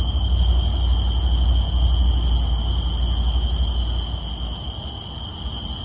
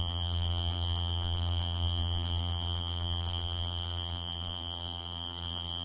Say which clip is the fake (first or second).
second